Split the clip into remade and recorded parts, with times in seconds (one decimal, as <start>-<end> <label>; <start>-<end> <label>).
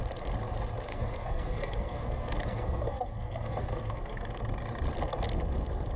0.0-0.9 recorded; 0.9-4.3 remade; 4.3-6.0 recorded